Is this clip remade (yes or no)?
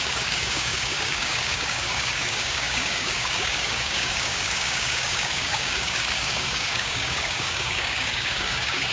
yes